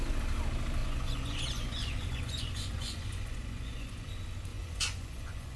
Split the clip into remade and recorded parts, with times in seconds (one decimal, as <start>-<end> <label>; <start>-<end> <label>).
0.0-0.8 recorded; 0.8-4.1 remade; 4.1-4.5 recorded; 4.5-5.6 remade

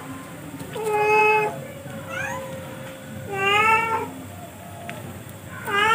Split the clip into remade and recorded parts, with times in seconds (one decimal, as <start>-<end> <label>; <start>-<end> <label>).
0.0-5.9 recorded